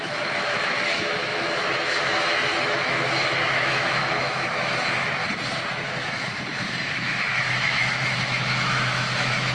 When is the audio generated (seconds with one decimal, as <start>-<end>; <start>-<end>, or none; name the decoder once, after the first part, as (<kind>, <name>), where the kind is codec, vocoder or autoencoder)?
0.0-5.2 (autoencoder, DAC-VAE); 5.7-9.5

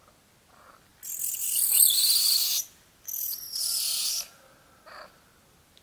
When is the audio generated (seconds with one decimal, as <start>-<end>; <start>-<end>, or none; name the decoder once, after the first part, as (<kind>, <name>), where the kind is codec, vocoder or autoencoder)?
none